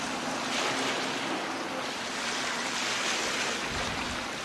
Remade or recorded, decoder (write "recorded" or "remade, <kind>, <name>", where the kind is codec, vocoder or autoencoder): recorded